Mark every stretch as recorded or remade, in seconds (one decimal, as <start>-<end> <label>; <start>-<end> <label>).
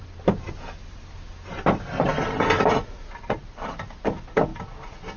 0.0-2.1 recorded; 2.1-3.2 remade; 3.2-5.2 recorded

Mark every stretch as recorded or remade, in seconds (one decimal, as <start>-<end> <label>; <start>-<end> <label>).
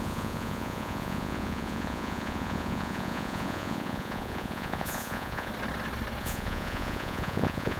0.0-5.5 remade; 5.5-6.2 recorded; 6.2-7.8 remade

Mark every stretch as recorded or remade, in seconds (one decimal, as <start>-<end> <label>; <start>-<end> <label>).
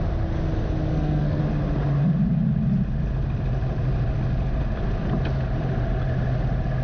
0.0-0.9 recorded; 0.9-1.4 remade; 1.4-6.8 recorded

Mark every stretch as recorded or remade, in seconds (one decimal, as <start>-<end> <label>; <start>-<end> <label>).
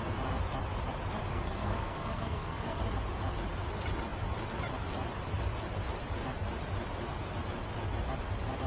0.0-1.3 recorded; 1.3-2.8 remade; 2.8-8.7 recorded